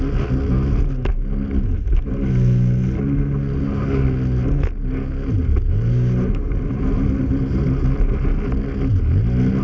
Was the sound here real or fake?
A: real